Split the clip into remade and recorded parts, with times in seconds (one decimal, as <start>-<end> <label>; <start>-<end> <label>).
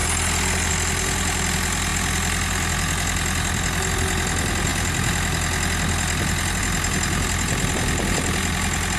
0.0-9.0 recorded